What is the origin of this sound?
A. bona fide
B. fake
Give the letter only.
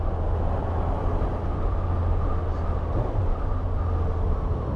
A